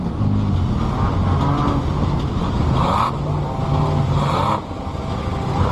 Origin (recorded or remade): recorded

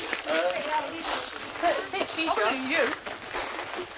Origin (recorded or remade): recorded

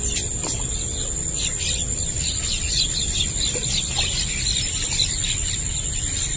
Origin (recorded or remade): recorded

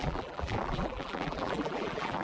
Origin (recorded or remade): remade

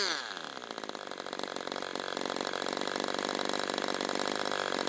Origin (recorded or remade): recorded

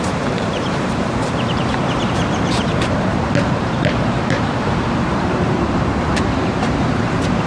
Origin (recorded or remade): remade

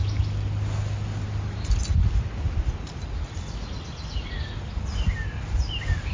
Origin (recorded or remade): recorded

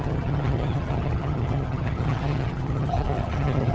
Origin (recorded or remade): remade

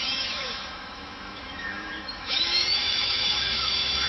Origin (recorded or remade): remade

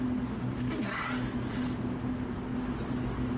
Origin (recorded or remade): recorded